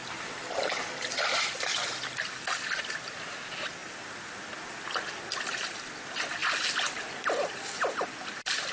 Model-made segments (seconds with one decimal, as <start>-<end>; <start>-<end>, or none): none

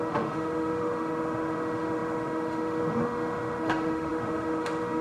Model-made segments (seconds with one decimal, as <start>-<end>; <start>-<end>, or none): 0.0-5.0

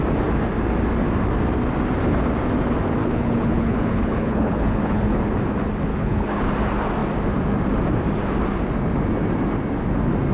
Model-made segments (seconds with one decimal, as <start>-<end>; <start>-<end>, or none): 3.0-5.2; 5.9-6.5

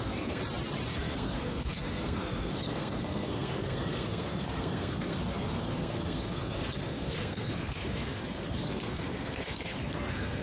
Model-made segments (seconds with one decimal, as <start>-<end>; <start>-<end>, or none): 0.0-0.4; 0.9-10.4

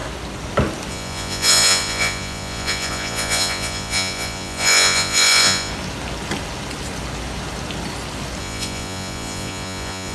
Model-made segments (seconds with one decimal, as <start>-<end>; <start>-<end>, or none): 0.9-5.7; 8.4-10.1

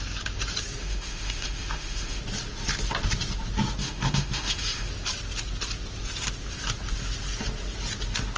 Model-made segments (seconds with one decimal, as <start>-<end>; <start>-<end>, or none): 0.8-2.2; 3.8-4.9

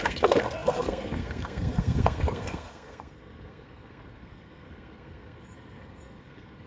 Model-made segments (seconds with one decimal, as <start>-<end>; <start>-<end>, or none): 0.0-6.7

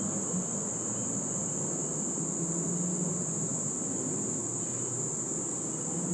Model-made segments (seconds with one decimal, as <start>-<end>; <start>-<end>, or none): none